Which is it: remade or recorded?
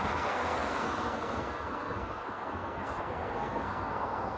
remade